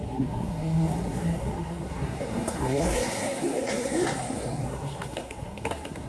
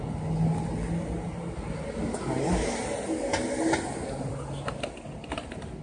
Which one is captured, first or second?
second